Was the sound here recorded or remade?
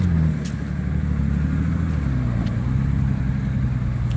recorded